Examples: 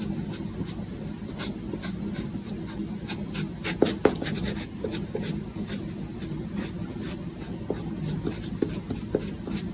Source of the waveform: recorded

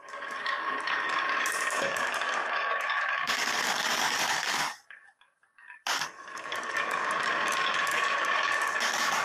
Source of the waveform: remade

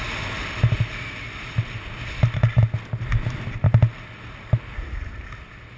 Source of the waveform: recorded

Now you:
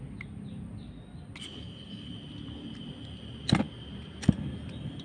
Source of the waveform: recorded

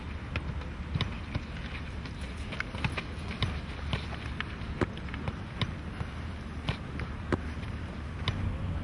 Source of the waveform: recorded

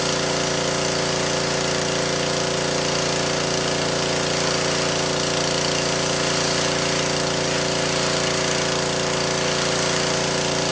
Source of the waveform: recorded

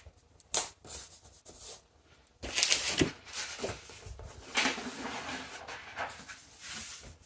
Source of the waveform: recorded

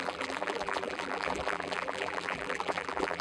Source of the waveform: remade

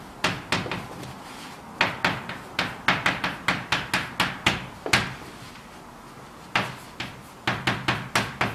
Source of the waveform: recorded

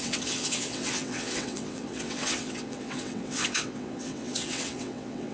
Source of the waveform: remade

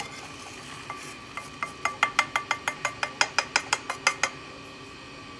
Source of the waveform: recorded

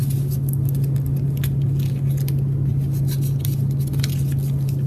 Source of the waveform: recorded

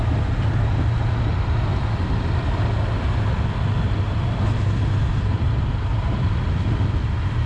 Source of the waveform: recorded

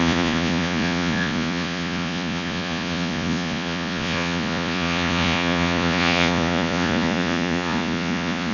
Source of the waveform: remade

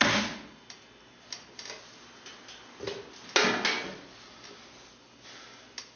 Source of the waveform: recorded